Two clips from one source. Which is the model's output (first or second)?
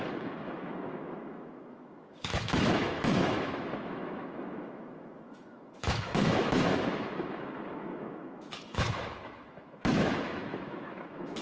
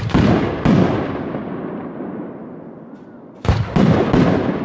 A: first